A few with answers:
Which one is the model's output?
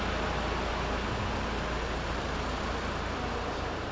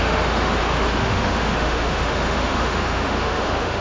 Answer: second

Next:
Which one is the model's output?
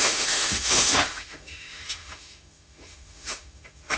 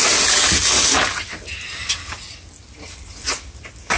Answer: first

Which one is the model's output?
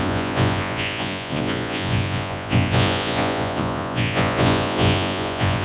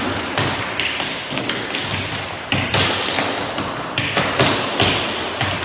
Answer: first